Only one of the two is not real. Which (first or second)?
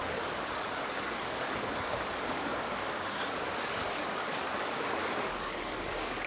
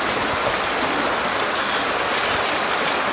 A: first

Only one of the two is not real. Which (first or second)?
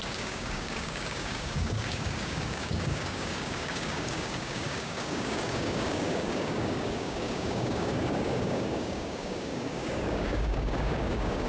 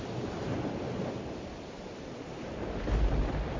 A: first